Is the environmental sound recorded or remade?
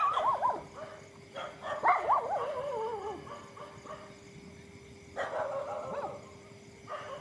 recorded